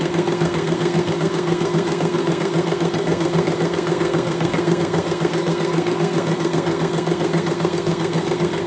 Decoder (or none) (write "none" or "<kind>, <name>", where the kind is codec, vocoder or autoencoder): codec, SNAC